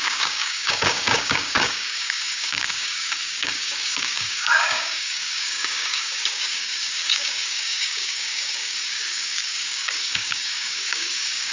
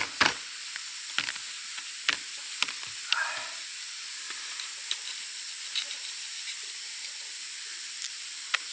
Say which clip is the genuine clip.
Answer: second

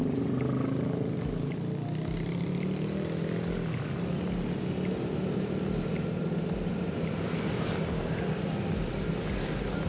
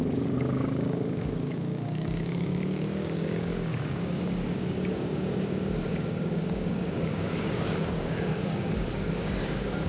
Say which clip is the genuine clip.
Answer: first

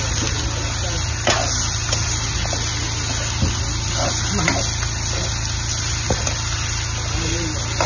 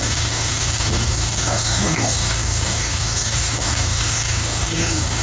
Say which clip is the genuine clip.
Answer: first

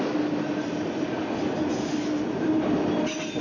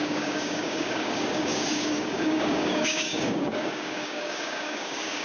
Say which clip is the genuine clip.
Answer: first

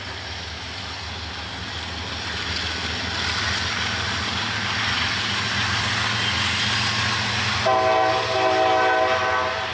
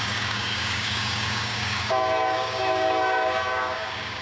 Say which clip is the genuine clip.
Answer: first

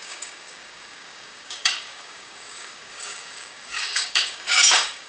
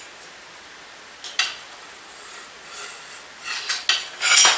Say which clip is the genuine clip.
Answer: second